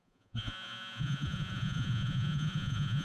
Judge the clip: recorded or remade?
remade